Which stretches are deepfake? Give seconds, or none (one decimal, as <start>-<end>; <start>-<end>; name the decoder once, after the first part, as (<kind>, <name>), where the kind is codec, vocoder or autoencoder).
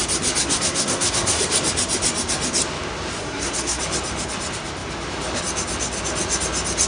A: 0.4-1.4 (codec, SNAC); 3.2-3.8